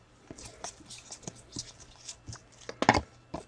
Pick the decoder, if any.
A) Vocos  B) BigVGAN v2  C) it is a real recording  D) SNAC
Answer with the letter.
C